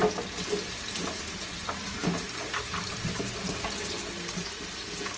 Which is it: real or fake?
real